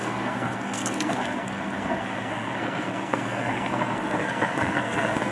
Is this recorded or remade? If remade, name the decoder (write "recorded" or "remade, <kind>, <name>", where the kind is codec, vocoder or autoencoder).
remade, codec, SNAC